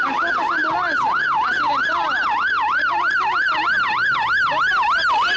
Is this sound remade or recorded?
recorded